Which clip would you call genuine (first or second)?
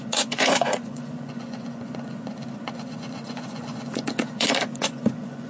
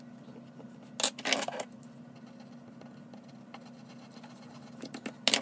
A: second